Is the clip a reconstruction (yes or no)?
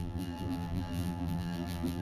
yes